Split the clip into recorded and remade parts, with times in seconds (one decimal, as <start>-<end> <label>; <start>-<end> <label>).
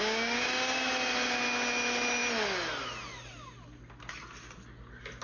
0.0-0.9 remade; 0.9-5.2 recorded